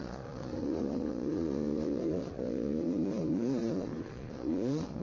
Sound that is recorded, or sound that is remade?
remade